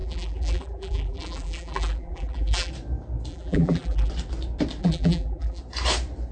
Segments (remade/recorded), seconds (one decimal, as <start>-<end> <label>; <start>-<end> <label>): 0.0-2.7 remade; 2.7-3.3 recorded; 3.3-4.1 remade; 4.1-4.8 recorded; 4.8-5.6 remade; 5.6-6.3 recorded